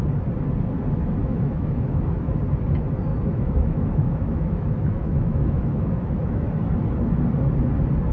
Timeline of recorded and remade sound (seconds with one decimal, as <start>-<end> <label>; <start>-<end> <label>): 0.0-1.2 recorded; 1.2-2.4 remade; 2.4-3.1 recorded; 3.1-6.5 remade; 6.5-8.1 recorded